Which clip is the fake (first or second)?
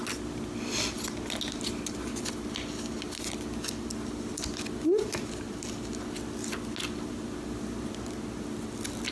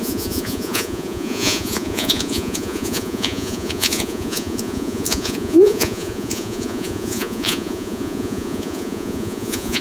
second